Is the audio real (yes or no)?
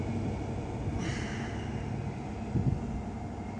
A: yes